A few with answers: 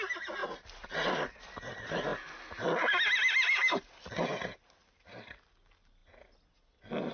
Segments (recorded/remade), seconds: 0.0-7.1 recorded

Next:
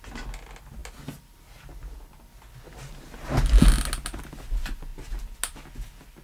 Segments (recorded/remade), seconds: 0.0-6.2 recorded